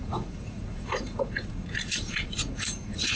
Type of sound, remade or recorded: remade